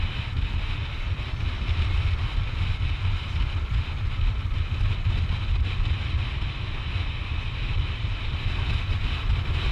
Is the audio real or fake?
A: real